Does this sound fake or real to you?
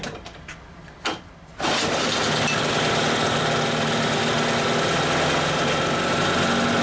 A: real